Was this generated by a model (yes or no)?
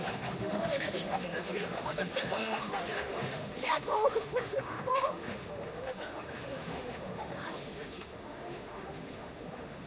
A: yes